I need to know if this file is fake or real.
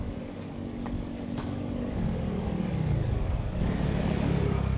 fake